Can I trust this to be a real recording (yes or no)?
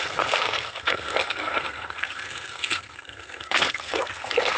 no